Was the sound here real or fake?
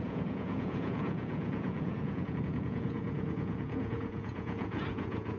fake